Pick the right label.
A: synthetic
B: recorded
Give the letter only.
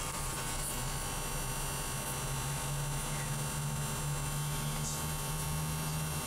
B